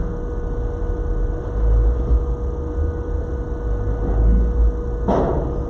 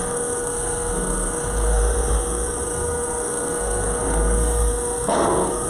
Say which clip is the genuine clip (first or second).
first